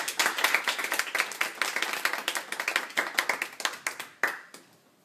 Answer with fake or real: real